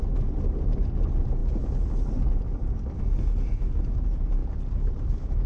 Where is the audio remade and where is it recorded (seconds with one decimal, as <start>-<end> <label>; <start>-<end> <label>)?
0.0-5.5 recorded